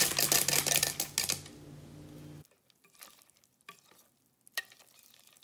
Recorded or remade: recorded